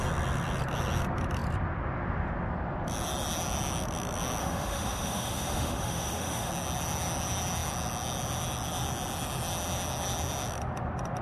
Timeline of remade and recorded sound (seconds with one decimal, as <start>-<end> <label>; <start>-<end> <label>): 0.0-4.4 recorded; 4.4-6.5 remade; 6.5-11.2 recorded